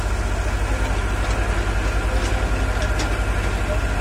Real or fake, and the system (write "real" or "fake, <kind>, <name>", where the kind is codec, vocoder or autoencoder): real